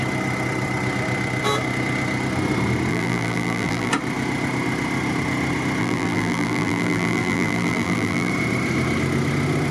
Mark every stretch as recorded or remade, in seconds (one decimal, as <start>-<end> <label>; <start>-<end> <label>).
0.0-2.9 recorded; 2.9-3.9 remade; 3.9-5.8 recorded; 5.8-8.3 remade; 8.3-9.7 recorded